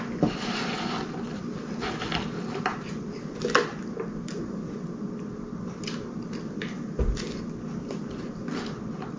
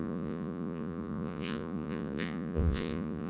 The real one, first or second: first